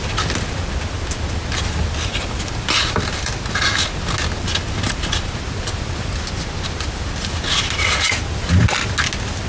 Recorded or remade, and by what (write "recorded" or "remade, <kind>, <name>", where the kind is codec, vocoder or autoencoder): recorded